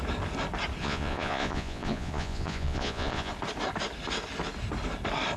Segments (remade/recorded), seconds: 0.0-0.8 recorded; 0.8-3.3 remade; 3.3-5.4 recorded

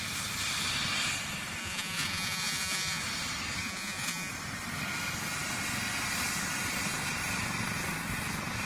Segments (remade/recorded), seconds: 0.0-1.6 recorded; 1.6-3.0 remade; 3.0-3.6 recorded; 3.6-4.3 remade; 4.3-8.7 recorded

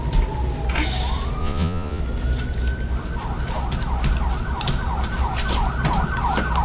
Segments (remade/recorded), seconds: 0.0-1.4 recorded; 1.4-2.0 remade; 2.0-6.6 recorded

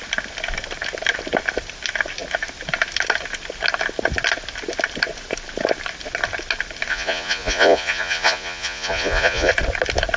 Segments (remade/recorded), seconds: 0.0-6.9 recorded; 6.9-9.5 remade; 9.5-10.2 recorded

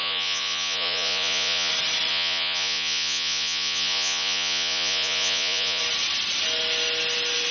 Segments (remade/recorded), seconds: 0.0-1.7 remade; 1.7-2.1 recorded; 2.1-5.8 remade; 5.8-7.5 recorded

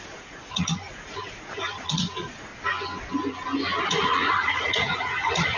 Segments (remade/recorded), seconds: 0.0-2.5 remade; 2.5-3.8 recorded; 3.8-5.6 remade